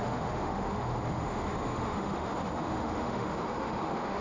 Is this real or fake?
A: fake